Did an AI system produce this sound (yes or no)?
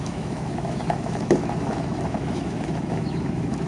yes